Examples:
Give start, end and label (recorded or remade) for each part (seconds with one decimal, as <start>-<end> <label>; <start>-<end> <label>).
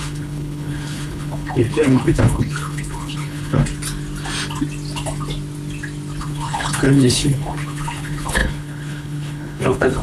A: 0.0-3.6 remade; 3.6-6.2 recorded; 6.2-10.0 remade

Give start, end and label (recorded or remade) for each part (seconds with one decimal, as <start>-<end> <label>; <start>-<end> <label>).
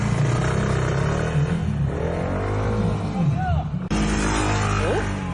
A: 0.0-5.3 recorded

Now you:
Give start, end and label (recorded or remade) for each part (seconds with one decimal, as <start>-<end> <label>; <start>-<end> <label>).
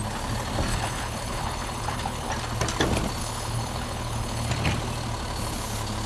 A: 0.0-0.7 recorded; 0.7-2.3 remade; 2.3-3.2 recorded; 3.2-4.5 remade; 4.5-6.1 recorded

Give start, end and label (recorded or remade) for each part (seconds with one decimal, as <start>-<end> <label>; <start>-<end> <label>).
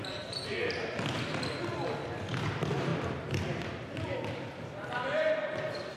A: 0.0-6.0 recorded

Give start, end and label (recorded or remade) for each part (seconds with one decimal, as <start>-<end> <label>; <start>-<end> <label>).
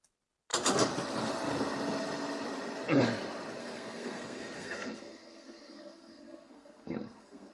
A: 0.0-3.6 recorded; 3.6-7.5 remade